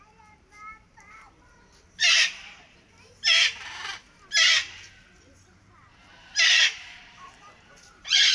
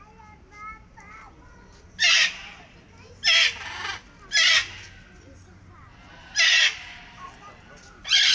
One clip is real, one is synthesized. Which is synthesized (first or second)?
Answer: first